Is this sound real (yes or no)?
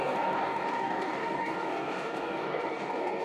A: no